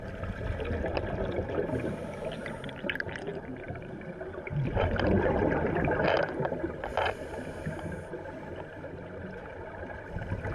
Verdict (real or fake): real